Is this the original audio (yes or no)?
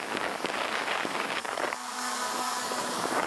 no